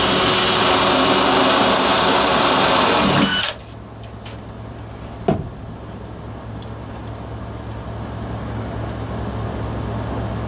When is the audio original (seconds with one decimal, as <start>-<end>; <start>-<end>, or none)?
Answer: 0.0-10.5